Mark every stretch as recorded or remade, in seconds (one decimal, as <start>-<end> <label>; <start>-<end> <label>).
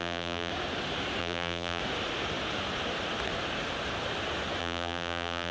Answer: 0.0-0.5 remade; 0.5-1.2 recorded; 1.2-1.8 remade; 1.8-4.6 recorded; 4.6-5.5 remade